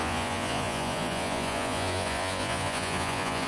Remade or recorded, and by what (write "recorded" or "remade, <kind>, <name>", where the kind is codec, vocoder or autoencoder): remade, vocoder, Vocos